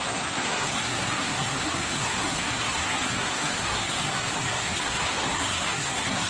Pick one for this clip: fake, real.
fake